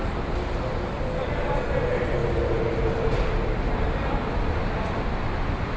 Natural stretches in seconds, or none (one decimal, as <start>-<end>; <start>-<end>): 0.0-5.8